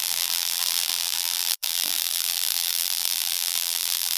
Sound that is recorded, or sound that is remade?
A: remade